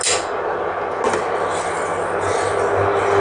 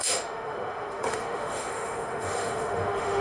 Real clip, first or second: first